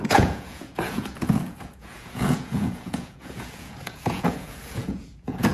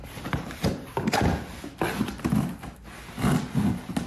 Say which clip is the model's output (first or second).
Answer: first